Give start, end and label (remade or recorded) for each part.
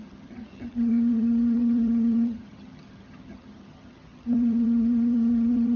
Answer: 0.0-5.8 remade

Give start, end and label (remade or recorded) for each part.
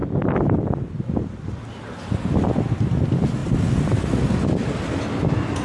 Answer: 0.0-1.3 remade; 1.3-5.6 recorded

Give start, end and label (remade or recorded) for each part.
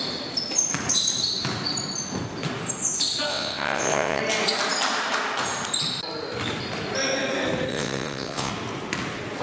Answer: 0.0-3.3 recorded; 3.3-4.2 remade; 4.2-7.7 recorded; 7.7-8.5 remade; 8.5-9.4 recorded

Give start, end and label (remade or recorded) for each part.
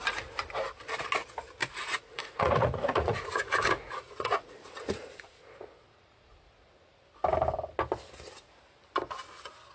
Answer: 0.0-1.6 recorded; 1.6-6.3 remade; 6.3-9.7 recorded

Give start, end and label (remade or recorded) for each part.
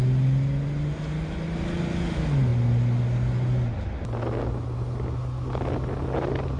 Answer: 0.0-6.6 recorded